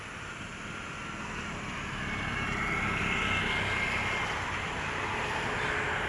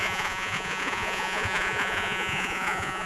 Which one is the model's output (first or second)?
second